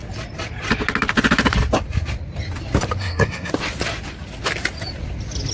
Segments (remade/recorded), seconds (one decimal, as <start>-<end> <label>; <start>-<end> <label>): 0.0-3.0 recorded; 3.0-3.5 remade; 3.5-5.5 recorded